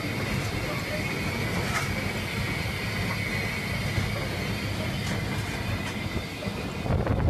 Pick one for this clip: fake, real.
real